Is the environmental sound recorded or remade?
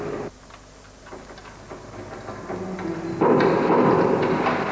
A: recorded